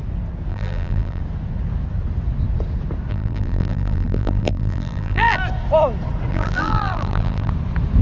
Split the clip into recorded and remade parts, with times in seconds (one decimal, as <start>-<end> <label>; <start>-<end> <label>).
0.0-0.5 recorded; 0.5-1.2 remade; 1.2-3.1 recorded; 3.1-5.4 remade; 5.4-6.3 recorded; 6.3-7.5 remade; 7.5-8.0 recorded